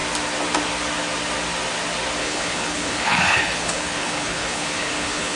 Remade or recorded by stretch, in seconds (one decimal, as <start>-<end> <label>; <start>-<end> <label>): 0.0-2.2 recorded; 2.2-5.4 remade

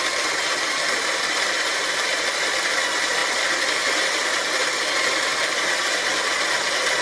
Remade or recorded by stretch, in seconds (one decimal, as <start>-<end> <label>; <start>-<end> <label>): 0.0-7.0 recorded

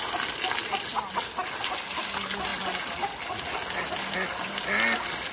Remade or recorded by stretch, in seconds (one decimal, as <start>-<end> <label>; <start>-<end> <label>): 0.0-5.3 recorded

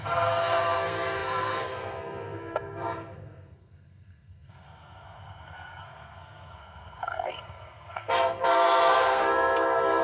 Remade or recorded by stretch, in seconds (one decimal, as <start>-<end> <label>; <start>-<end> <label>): 0.0-10.0 remade

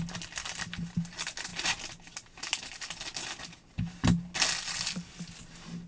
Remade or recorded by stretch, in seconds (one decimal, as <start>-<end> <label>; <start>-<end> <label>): 0.0-5.9 recorded